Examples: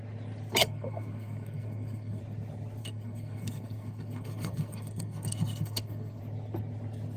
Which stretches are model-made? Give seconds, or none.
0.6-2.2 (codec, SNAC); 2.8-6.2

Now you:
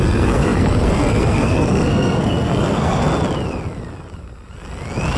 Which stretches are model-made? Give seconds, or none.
0.0-3.0 (codec, SNAC)

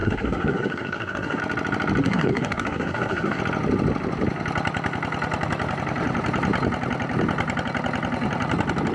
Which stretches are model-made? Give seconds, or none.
0.0-1.4 (codec, SNAC); 2.0-3.4

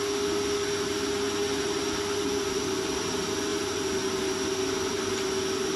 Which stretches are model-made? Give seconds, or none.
none

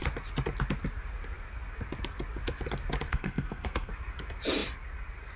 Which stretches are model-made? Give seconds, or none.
3.1-3.9 (codec, SNAC)